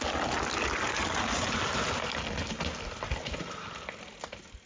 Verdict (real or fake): real